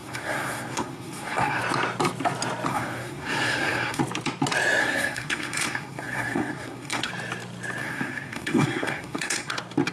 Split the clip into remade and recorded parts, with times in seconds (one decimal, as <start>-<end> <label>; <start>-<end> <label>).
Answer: 0.0-1.6 remade; 1.6-2.7 recorded; 2.7-4.0 remade; 4.0-4.8 recorded; 4.8-7.1 remade; 7.1-7.8 recorded; 7.8-9.5 remade; 9.5-9.9 recorded